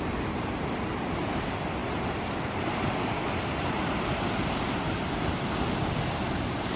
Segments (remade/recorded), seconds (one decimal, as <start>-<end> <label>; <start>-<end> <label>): 0.0-6.8 recorded